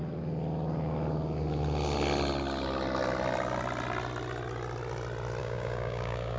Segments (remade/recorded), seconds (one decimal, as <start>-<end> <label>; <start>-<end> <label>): 0.0-5.4 recorded; 5.4-6.4 remade